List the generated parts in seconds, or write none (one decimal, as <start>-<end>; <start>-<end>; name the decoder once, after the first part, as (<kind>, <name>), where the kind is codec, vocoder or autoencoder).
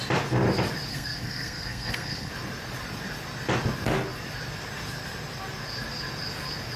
0.9-2.3 (codec, SNAC)